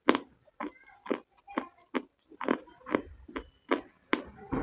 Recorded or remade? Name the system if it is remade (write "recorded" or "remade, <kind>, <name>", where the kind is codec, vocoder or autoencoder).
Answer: recorded